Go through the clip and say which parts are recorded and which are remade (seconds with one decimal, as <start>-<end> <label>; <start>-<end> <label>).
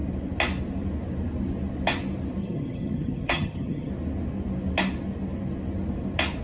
0.0-2.4 recorded; 2.4-3.9 remade; 3.9-6.4 recorded